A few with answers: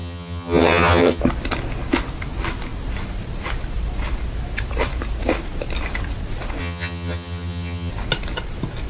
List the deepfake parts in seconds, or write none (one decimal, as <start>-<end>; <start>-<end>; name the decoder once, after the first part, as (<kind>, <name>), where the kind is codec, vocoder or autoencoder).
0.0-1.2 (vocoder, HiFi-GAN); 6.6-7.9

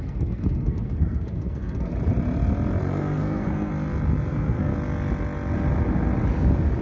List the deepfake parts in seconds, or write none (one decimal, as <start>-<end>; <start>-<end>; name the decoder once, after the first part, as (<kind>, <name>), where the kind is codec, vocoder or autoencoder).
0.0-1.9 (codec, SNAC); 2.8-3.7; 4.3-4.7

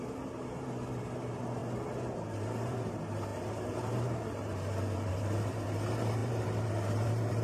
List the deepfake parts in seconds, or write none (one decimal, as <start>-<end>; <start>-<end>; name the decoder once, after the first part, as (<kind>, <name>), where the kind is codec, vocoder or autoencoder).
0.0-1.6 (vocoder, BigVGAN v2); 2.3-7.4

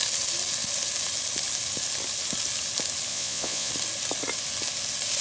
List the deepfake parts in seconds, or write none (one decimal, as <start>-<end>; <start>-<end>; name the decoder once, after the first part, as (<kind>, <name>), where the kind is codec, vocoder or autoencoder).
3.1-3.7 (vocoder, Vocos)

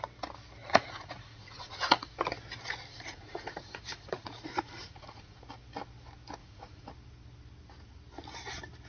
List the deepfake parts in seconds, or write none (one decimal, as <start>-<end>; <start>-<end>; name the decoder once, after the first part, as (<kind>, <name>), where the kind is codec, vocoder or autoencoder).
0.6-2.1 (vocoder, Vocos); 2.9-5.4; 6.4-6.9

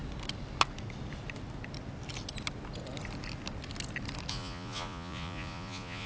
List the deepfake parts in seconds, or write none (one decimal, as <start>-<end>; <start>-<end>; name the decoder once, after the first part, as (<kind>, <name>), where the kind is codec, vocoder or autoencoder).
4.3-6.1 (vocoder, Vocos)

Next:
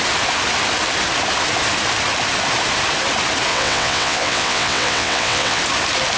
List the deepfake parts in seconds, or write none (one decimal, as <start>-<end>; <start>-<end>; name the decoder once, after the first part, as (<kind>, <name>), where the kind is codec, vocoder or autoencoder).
3.5-5.6 (vocoder, WaveNeXt)

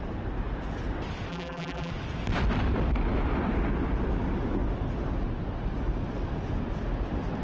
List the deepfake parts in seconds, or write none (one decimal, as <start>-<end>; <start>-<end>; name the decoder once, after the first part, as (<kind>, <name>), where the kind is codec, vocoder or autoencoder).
1.3-1.9 (vocoder, BigVGAN v2)